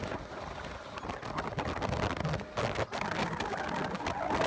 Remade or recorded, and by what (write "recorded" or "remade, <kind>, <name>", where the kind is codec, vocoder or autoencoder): recorded